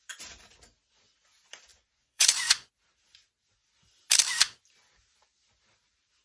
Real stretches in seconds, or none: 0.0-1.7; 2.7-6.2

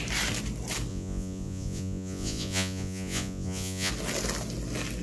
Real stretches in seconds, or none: 0.0-0.9; 3.9-5.0

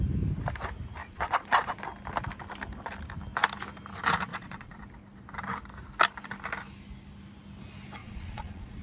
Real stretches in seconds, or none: 0.0-1.0; 1.8-4.3; 4.8-8.0

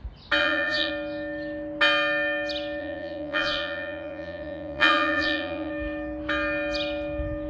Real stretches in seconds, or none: 0.0-0.4; 0.9-2.8; 5.7-7.5

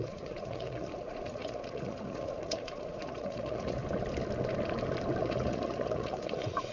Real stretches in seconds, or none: 3.8-5.2

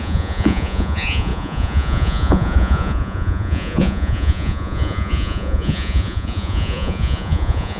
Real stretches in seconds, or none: none

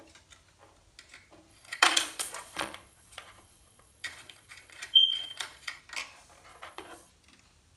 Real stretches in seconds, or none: 0.0-1.5; 5.8-6.5; 7.1-7.8

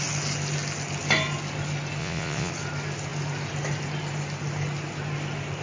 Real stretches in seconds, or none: 0.0-2.0; 2.5-5.6